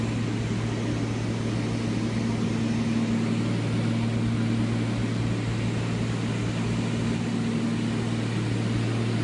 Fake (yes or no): no